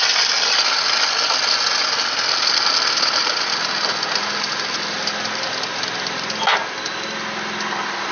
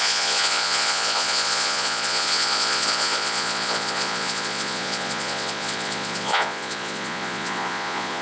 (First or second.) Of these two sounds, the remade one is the second